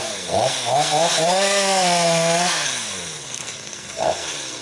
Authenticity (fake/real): fake